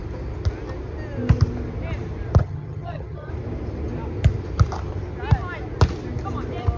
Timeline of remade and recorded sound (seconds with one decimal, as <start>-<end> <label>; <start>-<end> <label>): 0.0-2.4 recorded; 2.4-3.3 remade; 3.3-6.8 recorded